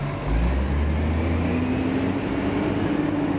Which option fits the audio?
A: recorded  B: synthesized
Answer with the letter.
A